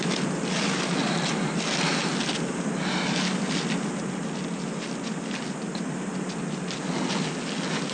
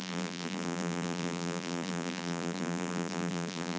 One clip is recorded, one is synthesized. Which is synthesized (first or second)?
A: second